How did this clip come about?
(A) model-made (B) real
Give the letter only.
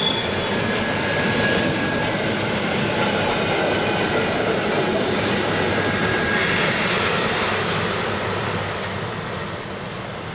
B